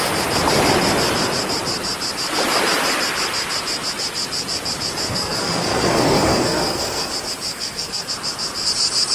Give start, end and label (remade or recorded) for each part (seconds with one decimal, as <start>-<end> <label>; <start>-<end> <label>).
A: 0.0-5.1 recorded; 5.1-7.1 remade; 7.1-7.5 recorded; 7.5-8.1 remade; 8.1-9.1 recorded